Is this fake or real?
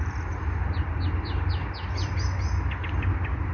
real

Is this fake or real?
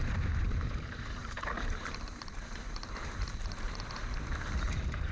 fake